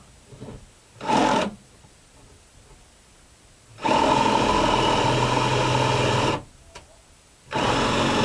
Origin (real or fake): real